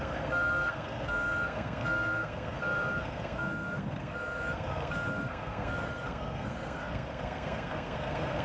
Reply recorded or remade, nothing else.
remade